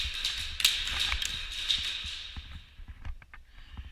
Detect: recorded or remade recorded